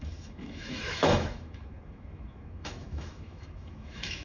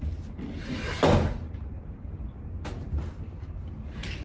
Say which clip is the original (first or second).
second